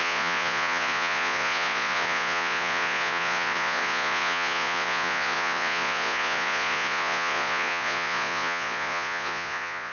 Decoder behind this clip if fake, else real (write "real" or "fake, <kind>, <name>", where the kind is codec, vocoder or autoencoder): fake, vocoder, Vocos